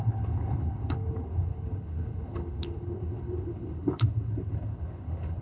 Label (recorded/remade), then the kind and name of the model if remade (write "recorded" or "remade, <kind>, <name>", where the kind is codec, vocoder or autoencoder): remade, codec, HILCodec